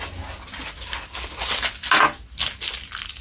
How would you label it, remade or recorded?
recorded